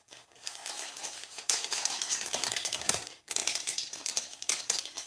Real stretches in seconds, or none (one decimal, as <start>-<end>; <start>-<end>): none